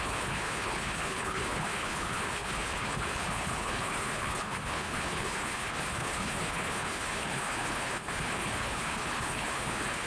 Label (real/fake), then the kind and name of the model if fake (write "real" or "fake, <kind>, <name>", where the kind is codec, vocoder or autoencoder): fake, codec, HILCodec